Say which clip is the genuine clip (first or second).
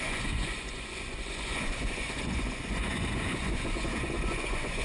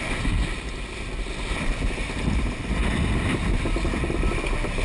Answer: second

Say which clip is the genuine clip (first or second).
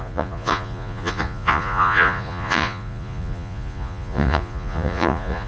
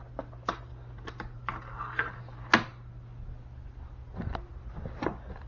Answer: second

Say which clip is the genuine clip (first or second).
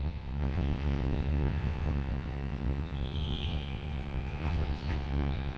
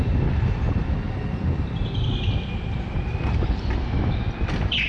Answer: second